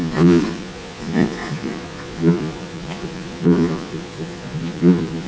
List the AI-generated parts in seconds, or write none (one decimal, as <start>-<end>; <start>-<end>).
0.0-5.3